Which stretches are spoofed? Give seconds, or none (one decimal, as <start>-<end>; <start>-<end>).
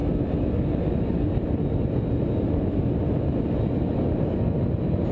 none